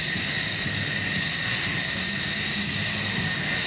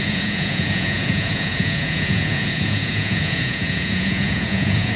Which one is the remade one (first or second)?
second